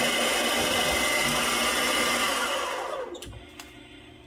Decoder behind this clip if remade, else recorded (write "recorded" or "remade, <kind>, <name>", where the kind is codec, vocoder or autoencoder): recorded